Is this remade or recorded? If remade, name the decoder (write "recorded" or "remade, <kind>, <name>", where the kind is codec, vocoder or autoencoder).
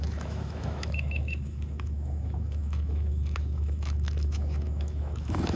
remade, autoencoder, DAC-VAE